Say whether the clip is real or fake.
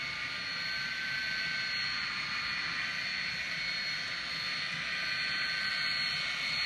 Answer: real